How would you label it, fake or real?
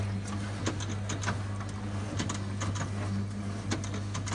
real